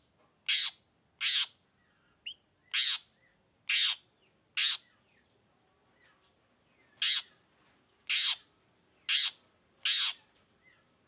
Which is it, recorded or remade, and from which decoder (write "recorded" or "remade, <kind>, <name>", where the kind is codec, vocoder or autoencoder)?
recorded